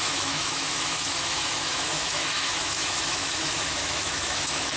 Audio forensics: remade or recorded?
remade